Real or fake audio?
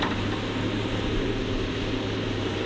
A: real